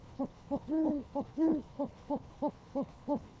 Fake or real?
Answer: fake